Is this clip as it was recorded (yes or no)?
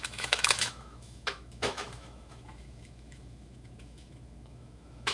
no